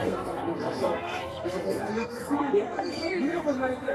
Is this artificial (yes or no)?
yes